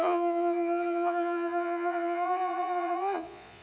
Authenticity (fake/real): fake